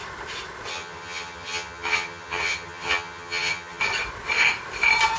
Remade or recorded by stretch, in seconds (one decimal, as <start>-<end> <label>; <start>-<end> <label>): 0.0-0.7 recorded; 0.7-3.8 remade; 3.8-5.2 recorded